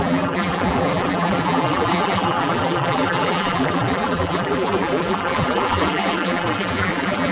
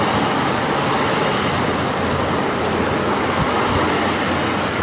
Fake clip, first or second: first